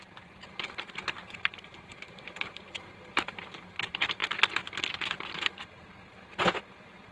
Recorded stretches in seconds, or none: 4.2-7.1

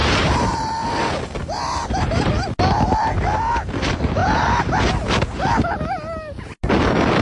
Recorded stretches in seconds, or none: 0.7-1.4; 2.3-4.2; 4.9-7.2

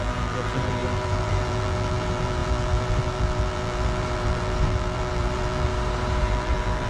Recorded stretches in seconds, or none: 5.7-6.2

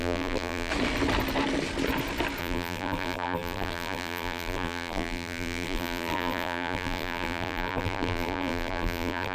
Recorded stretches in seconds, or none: 0.7-2.4

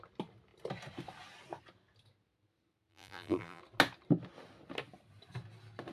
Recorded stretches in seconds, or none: 0.0-2.9; 3.6-5.9

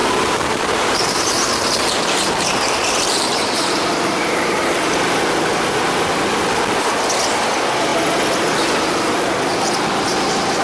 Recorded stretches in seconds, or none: 5.1-10.6

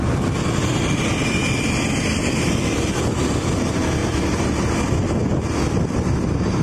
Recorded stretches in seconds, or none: 0.0-6.6